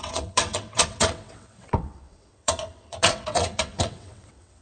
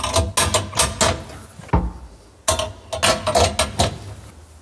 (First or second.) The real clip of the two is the second